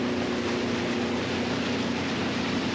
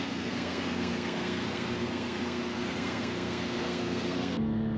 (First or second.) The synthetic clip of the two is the second